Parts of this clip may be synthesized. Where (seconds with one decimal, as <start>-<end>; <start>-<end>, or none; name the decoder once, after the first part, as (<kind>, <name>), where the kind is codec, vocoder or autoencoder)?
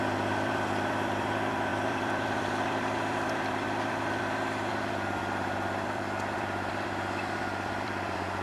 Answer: 0.0-8.4 (vocoder, BigVGAN v2)